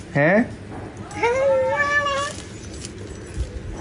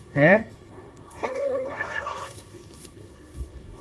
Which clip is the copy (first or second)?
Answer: second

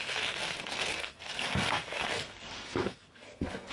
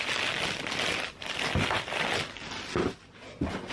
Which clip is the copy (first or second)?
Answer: first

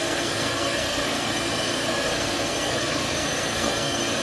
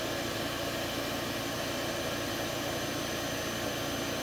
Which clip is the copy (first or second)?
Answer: first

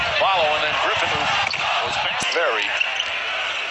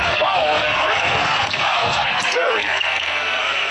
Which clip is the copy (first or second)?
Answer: second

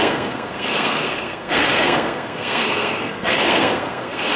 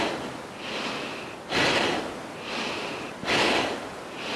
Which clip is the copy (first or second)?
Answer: first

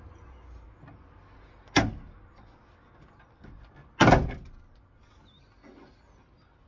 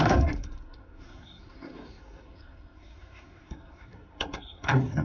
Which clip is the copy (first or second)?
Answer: second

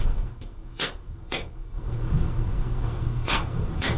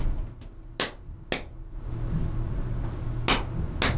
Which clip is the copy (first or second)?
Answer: first